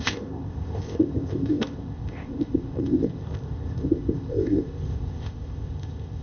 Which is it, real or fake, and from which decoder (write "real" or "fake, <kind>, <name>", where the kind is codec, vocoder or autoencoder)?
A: fake, codec, ZipCodec